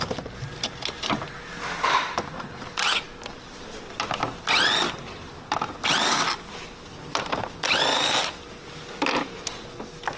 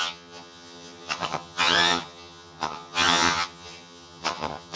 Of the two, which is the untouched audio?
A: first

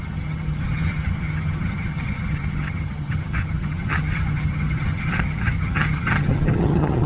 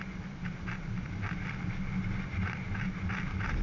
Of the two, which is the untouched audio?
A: second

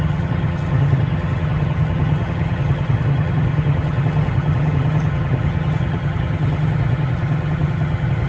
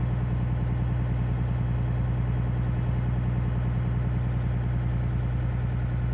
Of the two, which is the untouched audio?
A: second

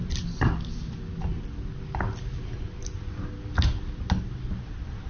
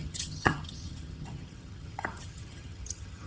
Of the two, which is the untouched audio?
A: first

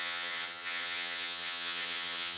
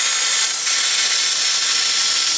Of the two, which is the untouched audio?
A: second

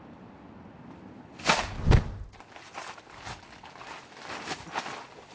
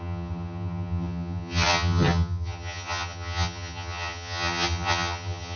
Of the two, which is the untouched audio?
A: first